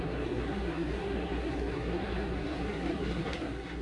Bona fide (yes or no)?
no